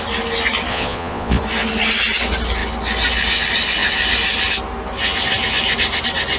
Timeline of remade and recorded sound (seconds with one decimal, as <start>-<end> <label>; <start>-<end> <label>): 0.0-0.7 recorded; 0.7-1.4 remade; 1.4-6.4 recorded